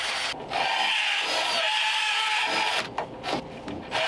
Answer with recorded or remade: recorded